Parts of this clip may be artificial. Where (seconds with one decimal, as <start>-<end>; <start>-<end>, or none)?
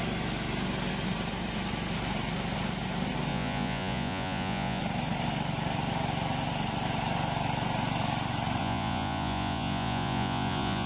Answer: 3.3-4.8; 8.6-10.9